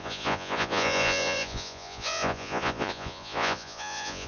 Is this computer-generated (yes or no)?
yes